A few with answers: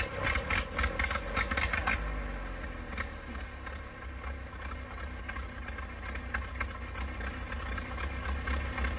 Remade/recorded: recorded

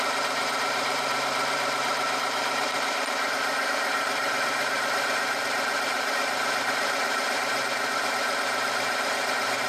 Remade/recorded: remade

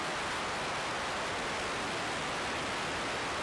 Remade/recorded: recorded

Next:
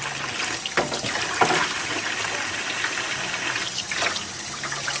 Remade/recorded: recorded